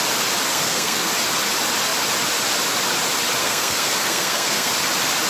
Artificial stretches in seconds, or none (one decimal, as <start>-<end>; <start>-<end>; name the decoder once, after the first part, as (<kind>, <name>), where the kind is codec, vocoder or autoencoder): 0.5-1.1 (codec, SNAC); 3.4-4.7

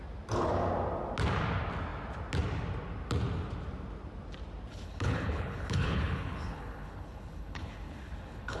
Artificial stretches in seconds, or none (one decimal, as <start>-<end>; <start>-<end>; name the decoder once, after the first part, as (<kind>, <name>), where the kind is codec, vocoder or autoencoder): 4.7-8.6 (codec, HILCodec)

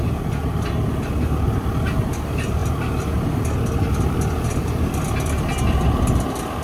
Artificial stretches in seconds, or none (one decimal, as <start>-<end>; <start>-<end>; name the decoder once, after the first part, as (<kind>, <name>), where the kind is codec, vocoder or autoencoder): none

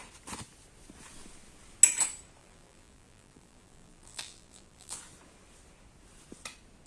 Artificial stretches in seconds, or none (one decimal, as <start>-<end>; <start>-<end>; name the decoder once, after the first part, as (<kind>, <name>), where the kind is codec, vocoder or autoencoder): 2.4-5.0 (vocoder, BigVGAN v2)

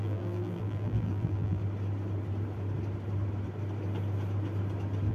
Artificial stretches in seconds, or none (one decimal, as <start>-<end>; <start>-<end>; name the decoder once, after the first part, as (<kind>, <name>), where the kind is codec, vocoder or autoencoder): 0.0-1.6 (vocoder, BigVGAN v2)

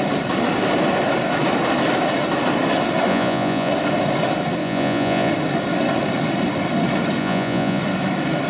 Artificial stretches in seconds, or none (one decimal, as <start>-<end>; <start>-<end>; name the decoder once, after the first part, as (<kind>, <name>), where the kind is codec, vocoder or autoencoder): 3.1-3.7 (vocoder, Vocos); 4.6-5.3; 7.2-7.8

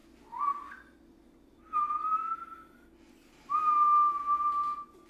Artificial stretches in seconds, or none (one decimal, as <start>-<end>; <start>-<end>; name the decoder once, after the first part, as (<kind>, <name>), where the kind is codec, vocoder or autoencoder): none

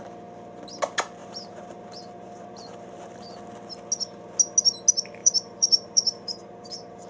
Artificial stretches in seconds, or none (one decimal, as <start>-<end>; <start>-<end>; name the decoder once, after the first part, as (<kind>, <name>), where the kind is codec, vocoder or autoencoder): 1.2-3.3 (vocoder, BigVGAN v2); 5.2-7.1